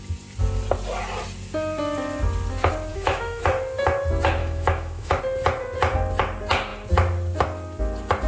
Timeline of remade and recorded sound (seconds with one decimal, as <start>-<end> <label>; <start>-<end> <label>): 0.0-2.9 recorded; 2.9-3.4 remade; 3.4-4.4 recorded; 4.4-5.2 remade; 5.2-8.3 recorded